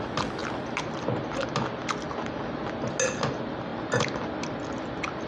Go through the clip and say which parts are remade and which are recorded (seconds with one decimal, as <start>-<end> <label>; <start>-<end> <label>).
0.0-5.3 recorded